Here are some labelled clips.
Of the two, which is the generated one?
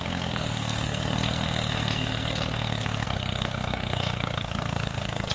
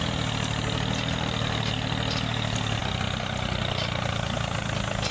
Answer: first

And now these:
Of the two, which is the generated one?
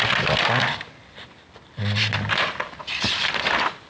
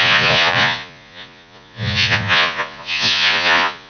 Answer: second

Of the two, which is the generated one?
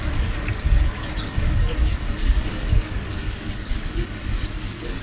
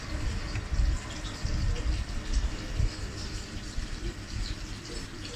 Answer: first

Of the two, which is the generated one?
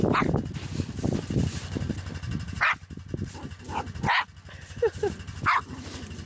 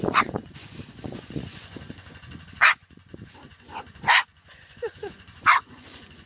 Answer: second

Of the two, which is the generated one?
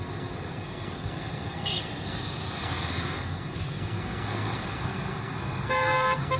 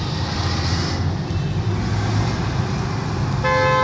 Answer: first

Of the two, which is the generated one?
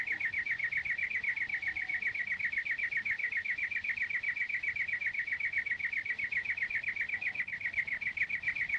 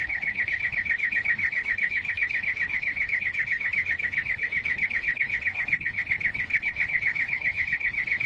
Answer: second